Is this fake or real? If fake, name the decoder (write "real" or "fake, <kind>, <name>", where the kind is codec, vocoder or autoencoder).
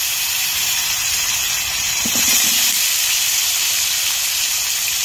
real